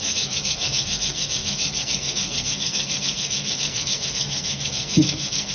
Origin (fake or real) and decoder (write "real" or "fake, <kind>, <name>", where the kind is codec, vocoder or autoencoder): fake, codec, SNAC